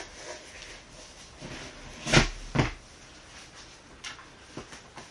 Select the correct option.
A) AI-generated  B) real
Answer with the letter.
B